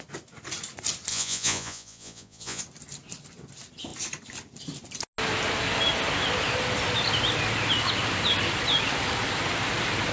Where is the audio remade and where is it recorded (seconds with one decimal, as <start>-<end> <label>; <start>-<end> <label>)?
0.0-1.1 recorded; 1.1-2.6 remade; 2.6-10.1 recorded